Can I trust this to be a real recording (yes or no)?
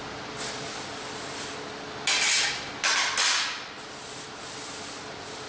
yes